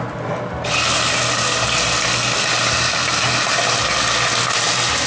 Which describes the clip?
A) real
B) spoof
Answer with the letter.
A